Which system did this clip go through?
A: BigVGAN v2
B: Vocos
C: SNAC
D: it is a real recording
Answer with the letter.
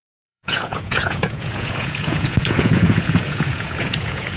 B